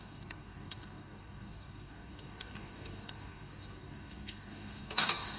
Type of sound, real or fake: fake